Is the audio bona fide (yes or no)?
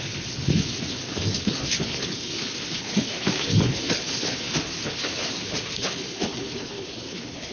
no